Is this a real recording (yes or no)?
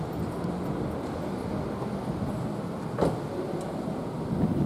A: yes